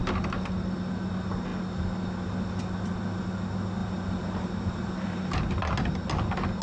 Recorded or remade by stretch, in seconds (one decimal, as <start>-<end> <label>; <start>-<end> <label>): 0.0-3.8 recorded; 3.8-5.4 remade; 5.4-6.6 recorded